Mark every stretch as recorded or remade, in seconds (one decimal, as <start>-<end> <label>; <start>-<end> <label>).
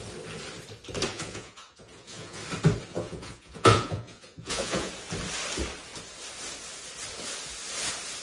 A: 0.0-1.1 recorded; 1.1-2.4 remade; 2.4-2.9 recorded; 2.9-4.9 remade; 4.9-8.2 recorded